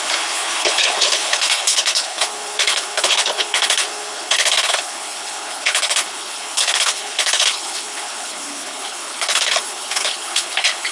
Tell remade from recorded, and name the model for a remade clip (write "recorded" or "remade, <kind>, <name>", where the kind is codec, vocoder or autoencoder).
remade, codec, HILCodec